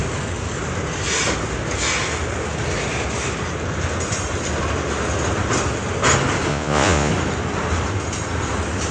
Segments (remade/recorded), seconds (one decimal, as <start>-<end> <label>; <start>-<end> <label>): 0.0-6.5 recorded; 6.5-7.1 remade; 7.1-8.9 recorded